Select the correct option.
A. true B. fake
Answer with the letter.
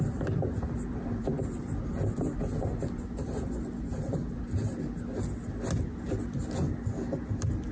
A